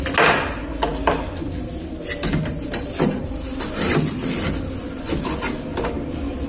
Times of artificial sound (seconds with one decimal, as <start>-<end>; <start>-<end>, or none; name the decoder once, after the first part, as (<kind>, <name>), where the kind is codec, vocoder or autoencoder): 0.9-1.9 (vocoder, BigVGAN v2); 2.5-6.5